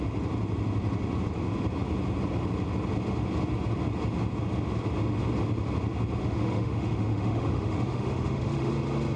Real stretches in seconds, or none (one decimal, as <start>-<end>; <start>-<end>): 0.0-6.2; 8.7-9.2